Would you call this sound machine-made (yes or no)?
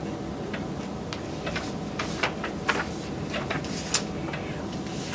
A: no